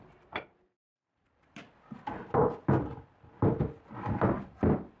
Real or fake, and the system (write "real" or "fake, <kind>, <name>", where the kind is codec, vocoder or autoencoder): fake, vocoder, BigVGAN v2